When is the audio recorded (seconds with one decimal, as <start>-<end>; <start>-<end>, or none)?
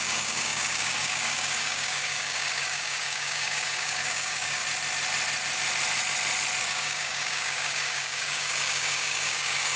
4.6-6.6